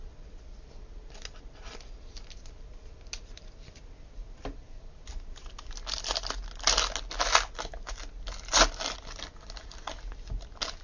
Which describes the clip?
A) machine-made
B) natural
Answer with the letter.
B